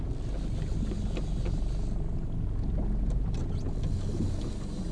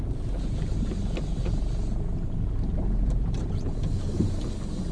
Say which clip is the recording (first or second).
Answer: first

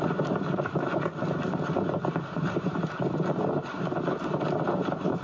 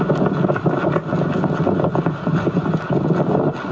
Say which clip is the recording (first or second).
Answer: second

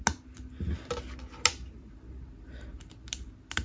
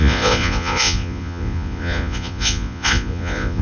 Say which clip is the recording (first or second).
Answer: first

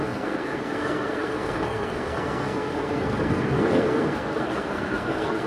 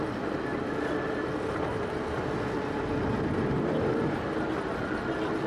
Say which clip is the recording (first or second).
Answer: second